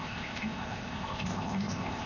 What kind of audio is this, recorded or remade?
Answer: remade